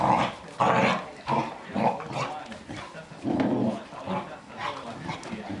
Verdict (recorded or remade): recorded